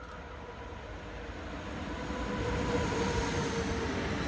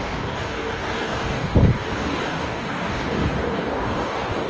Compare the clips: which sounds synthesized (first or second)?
second